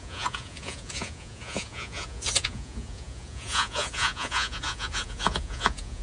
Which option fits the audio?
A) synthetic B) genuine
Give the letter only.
A